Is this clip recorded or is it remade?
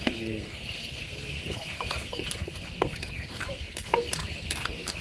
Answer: remade